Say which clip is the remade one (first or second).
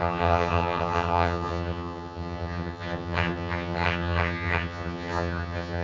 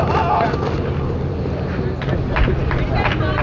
first